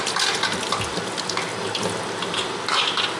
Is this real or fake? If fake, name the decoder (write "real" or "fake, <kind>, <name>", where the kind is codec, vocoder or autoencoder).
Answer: real